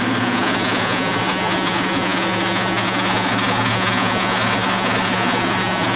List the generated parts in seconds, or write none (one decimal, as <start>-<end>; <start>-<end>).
0.0-6.0